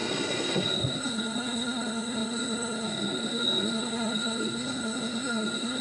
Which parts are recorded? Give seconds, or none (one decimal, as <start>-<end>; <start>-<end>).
none